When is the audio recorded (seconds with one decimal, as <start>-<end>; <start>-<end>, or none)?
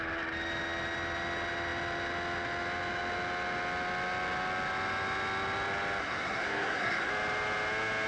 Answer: 0.0-6.0; 7.1-8.1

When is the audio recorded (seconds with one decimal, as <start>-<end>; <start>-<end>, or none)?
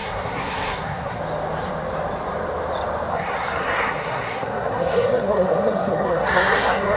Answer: 1.2-3.1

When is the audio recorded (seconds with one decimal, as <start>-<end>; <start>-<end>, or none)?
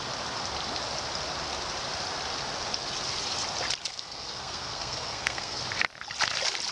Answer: 0.0-3.9; 5.6-6.7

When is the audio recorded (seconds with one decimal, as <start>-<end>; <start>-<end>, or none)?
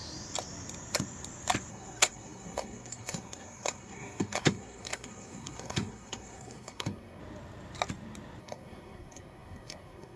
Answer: 0.0-1.7; 7.2-8.4